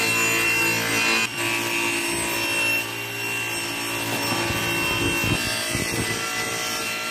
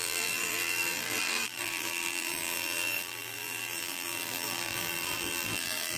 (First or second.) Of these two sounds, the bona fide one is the first